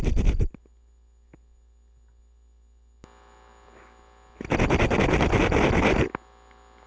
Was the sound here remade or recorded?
recorded